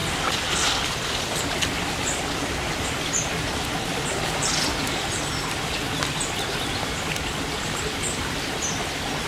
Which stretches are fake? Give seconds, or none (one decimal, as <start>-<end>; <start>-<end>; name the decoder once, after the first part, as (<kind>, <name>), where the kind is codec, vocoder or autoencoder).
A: 0.0-5.1 (vocoder, BigVGAN v2)